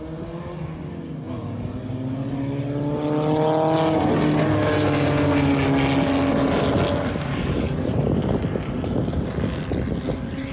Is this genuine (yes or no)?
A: yes